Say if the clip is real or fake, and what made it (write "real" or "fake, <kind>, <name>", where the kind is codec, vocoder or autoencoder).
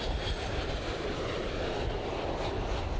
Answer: real